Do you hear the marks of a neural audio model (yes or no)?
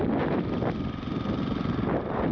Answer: no